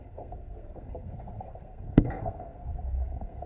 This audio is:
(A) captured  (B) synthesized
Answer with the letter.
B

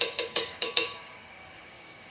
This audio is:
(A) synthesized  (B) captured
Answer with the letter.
A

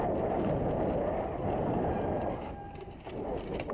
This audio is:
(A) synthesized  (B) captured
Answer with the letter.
B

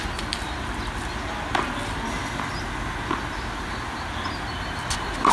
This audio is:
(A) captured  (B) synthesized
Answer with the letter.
A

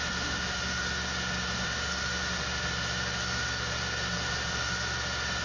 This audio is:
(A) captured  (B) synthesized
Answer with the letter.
A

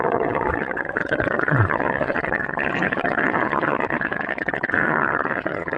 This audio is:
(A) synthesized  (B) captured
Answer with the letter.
A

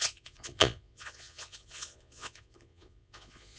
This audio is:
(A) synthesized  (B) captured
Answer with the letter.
A